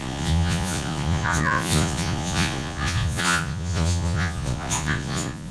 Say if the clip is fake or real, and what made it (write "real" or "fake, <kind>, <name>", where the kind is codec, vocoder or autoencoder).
fake, vocoder, Vocos